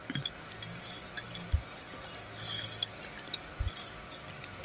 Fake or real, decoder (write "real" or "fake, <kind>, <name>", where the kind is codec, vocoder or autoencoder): real